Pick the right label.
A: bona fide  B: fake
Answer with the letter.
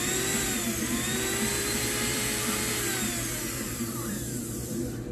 B